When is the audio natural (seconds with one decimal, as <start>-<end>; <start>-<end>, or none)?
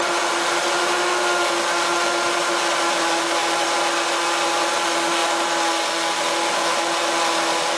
0.0-7.8